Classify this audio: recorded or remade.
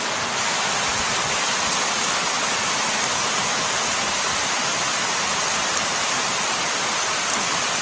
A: recorded